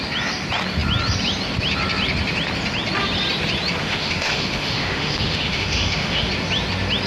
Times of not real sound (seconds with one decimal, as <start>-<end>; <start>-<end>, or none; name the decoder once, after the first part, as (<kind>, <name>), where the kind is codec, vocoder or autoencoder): 3.8-6.3 (autoencoder, DAC-VAE)